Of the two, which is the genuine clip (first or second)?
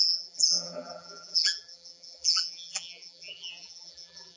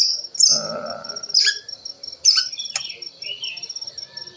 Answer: second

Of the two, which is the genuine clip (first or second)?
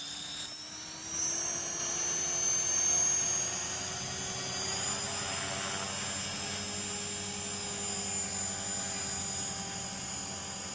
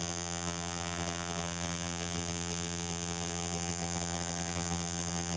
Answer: first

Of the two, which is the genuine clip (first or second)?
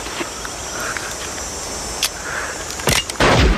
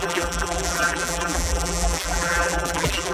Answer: first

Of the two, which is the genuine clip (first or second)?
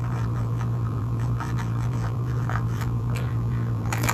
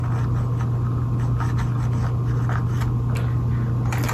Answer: second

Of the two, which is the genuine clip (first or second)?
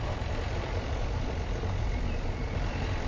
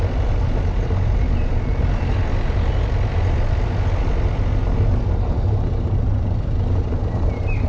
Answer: second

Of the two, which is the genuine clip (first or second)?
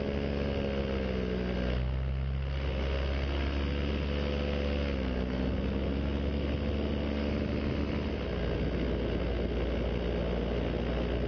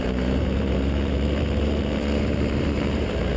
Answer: first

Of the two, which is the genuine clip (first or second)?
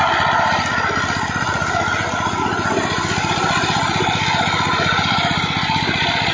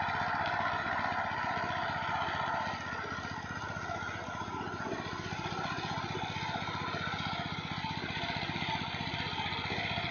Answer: second